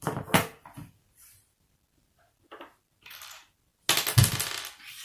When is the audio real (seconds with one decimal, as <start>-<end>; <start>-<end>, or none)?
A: 0.0-5.0